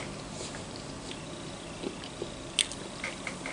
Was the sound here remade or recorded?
recorded